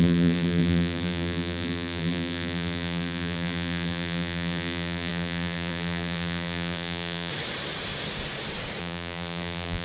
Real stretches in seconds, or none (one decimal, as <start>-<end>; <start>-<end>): 7.3-8.8